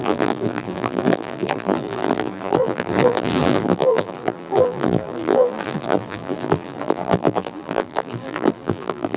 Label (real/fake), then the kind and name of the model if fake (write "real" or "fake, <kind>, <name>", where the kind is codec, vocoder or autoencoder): fake, vocoder, BigVGAN v2